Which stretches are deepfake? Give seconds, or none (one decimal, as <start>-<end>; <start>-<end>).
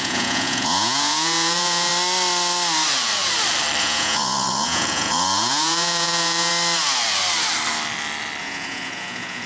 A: 0.0-1.9; 3.8-6.5; 8.4-9.5